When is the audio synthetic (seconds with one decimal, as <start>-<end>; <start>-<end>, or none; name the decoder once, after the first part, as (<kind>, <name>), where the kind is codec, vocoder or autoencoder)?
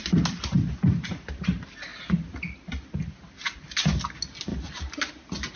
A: none